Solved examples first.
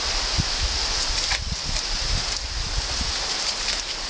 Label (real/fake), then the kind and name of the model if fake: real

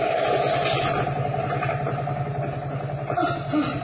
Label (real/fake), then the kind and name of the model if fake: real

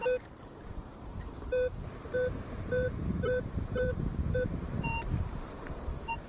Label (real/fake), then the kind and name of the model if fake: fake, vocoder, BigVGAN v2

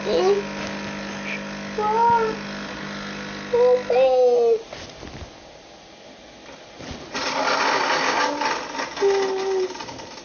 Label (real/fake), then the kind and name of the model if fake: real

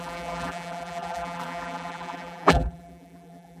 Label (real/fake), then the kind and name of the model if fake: fake, vocoder, BigVGAN v2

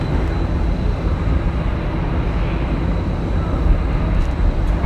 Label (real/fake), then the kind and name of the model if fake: real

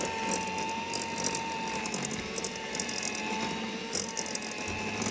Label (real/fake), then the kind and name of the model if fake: real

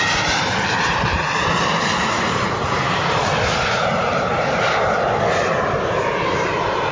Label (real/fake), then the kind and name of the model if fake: fake, vocoder, BigVGAN v2